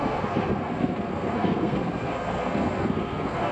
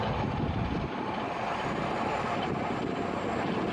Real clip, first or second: second